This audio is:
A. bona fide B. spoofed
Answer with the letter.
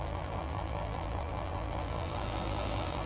B